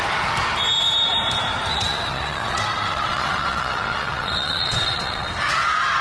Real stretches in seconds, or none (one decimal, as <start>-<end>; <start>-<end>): 0.0-1.7; 5.3-6.0